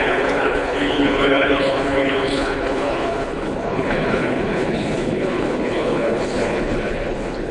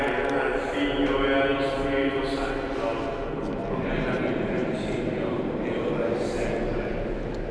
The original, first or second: second